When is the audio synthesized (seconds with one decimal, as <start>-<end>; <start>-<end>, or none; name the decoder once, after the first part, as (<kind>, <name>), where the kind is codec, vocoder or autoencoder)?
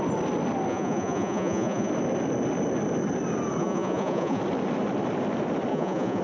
0.7-1.9 (vocoder, Vocos); 3.6-4.4; 5.7-6.2